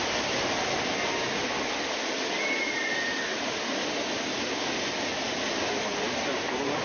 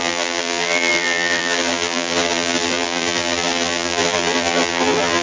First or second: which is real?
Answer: first